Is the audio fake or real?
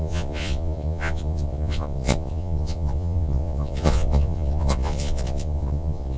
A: fake